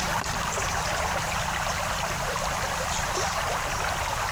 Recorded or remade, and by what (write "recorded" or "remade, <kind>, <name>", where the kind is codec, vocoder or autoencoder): remade, vocoder, BigVGAN v2